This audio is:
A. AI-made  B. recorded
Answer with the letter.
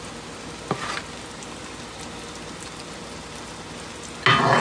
B